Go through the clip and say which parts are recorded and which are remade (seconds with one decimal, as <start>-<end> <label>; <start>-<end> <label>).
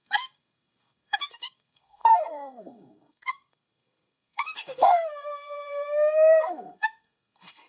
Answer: 0.0-7.7 remade